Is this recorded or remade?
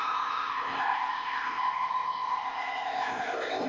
remade